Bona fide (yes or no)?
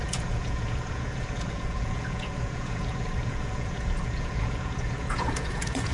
no